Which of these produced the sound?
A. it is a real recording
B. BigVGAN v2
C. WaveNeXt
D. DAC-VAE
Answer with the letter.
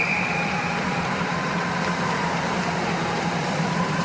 B